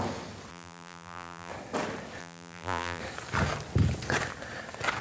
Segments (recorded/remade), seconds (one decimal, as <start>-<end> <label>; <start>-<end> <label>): 0.0-0.5 recorded; 0.5-1.5 remade; 1.5-2.2 recorded; 2.2-3.0 remade; 3.0-5.0 recorded